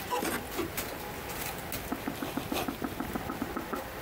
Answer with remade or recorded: recorded